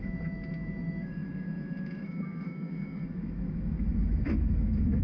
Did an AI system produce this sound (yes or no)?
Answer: yes